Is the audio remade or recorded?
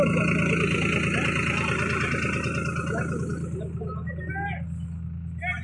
recorded